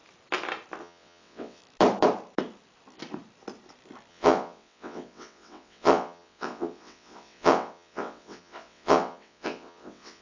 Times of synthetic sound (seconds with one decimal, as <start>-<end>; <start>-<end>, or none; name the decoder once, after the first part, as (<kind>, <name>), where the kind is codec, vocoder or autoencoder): 0.8-1.6 (vocoder, WaveNeXt); 4.1-10.2